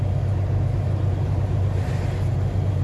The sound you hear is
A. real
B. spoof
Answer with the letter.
A